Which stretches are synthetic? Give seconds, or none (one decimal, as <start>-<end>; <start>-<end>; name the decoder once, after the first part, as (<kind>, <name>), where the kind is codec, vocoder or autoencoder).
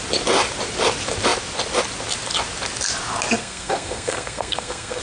3.4-5.0 (codec, SNAC)